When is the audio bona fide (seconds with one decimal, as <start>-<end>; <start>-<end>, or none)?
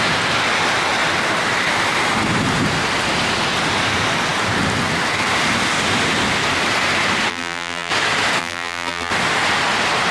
0.0-7.3; 7.9-8.4; 9.1-10.1